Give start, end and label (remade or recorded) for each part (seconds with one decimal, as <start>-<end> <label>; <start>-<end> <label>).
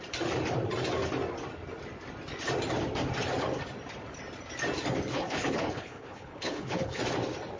0.0-5.1 recorded; 5.1-7.0 remade; 7.0-7.6 recorded